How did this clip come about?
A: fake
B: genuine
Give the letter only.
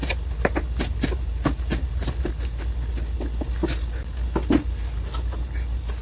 B